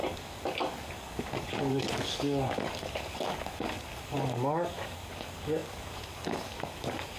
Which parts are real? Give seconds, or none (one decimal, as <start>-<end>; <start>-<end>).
none

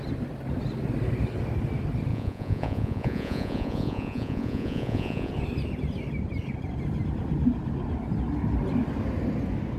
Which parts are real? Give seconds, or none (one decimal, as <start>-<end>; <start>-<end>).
0.0-2.1; 5.3-9.8

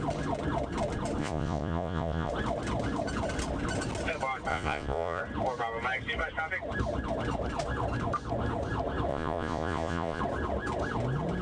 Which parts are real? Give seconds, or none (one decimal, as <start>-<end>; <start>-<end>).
0.0-1.2; 2.3-4.5; 5.2-9.1; 10.2-11.4

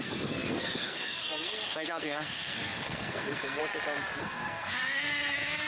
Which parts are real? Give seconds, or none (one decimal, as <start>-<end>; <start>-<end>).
3.6-4.2

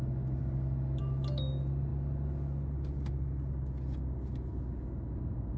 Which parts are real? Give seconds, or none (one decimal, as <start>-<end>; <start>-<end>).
0.0-5.6

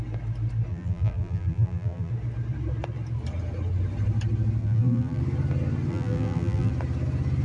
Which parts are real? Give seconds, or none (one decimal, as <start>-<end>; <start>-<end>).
0.0-0.7; 2.1-4.6; 5.2-5.9; 6.7-7.4

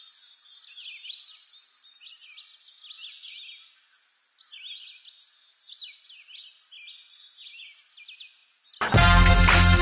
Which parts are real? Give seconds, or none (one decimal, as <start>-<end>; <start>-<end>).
0.0-9.8